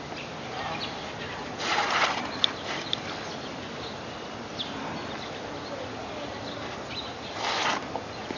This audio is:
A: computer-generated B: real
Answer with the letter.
B